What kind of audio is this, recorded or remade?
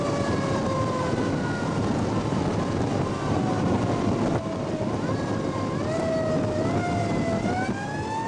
recorded